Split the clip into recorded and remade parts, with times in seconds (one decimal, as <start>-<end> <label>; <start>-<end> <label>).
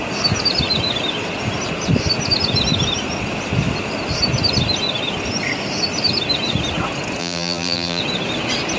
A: 0.0-7.2 recorded; 7.2-8.0 remade; 8.0-8.8 recorded